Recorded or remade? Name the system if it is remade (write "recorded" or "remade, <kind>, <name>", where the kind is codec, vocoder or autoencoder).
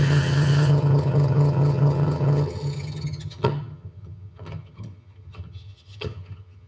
remade, vocoder, HiFi-GAN